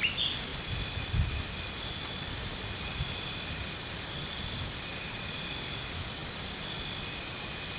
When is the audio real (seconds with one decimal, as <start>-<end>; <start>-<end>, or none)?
0.0-7.8